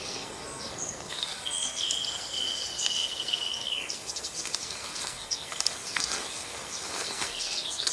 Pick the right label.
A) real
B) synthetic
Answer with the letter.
B